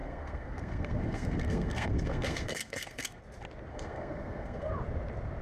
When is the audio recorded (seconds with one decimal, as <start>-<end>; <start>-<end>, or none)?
3.2-3.7; 4.7-5.4